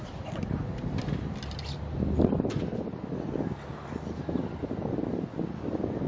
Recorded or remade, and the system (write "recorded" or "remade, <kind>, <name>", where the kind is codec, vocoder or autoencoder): recorded